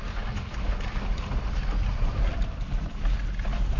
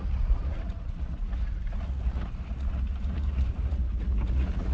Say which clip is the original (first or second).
first